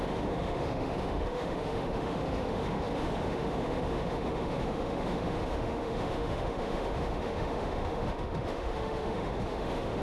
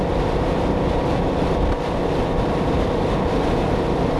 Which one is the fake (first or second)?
first